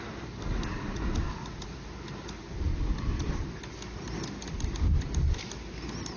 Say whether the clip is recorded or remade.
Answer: recorded